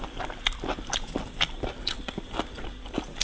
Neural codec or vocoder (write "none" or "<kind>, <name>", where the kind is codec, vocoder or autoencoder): none